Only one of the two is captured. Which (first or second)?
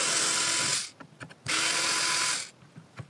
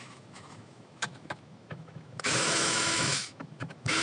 first